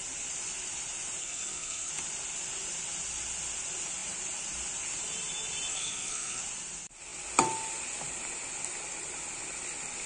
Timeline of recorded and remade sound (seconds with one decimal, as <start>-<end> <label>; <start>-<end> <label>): 0.0-1.2 recorded; 1.2-1.9 remade; 1.9-5.7 recorded; 5.7-6.4 remade; 6.4-10.1 recorded